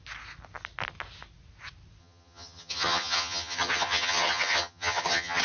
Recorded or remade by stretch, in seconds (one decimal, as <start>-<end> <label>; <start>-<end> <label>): 0.0-2.0 recorded; 2.0-5.4 remade